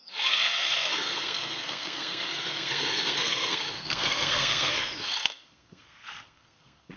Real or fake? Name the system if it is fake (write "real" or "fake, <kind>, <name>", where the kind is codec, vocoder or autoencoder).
fake, codec, SNAC